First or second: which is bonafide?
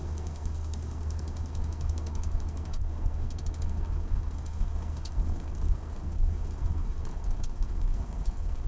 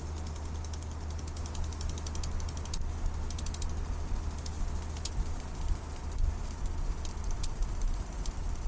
second